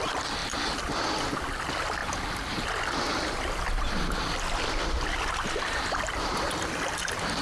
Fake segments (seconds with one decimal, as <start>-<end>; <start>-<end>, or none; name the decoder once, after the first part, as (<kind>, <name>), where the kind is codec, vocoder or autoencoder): none